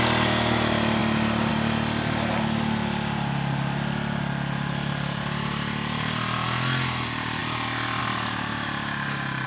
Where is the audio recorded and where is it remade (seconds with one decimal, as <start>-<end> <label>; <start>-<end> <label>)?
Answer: 0.0-9.5 recorded